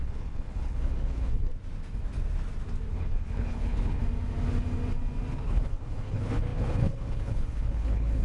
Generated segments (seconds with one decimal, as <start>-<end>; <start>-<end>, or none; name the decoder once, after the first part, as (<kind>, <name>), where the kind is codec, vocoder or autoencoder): 0.0-1.5 (codec, HILCodec); 2.9-4.0; 5.3-8.2